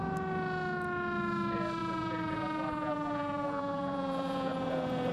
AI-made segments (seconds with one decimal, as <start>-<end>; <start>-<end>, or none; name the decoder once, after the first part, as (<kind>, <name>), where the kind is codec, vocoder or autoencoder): 1.8-5.1 (vocoder, Vocos)